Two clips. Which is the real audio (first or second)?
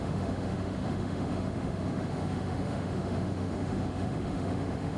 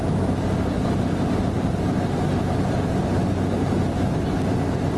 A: second